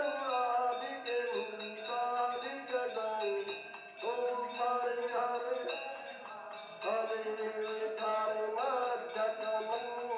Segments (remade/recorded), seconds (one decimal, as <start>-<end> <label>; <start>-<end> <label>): 0.0-10.2 recorded